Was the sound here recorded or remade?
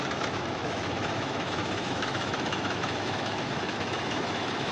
remade